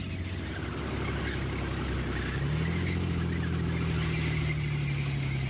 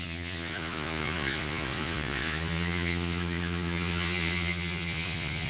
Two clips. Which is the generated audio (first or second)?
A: second